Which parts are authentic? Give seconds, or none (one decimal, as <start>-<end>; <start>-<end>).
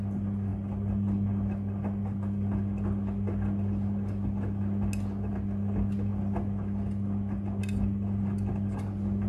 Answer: 0.0-9.3